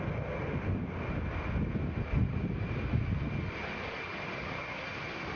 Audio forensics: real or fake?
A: real